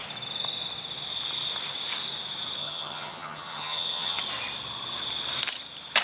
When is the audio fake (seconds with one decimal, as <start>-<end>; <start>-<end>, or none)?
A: 2.6-4.2